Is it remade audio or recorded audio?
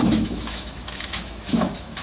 remade